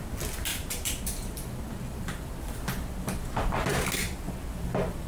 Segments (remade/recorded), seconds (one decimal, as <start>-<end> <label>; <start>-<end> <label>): 0.0-0.5 recorded; 0.5-2.3 remade; 2.3-5.1 recorded